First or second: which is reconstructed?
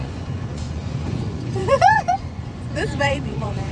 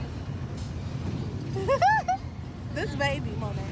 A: first